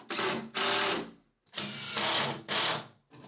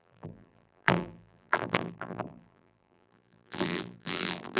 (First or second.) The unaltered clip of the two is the first